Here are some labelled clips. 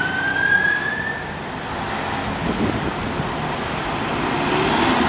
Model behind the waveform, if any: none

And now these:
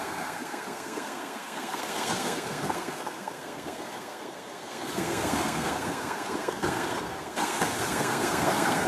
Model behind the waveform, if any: codec, SNAC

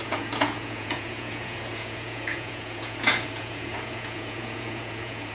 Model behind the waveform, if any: vocoder, Vocos